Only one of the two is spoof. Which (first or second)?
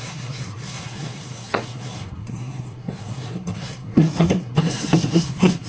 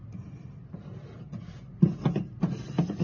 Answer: first